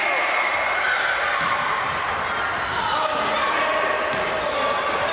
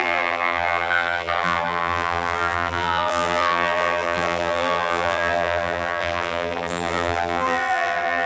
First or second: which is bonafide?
first